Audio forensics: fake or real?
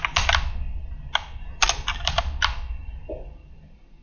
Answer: real